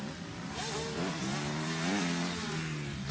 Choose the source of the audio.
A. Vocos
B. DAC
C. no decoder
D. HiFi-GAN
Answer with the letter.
C